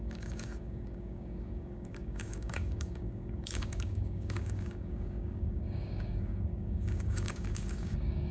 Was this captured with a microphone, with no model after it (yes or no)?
no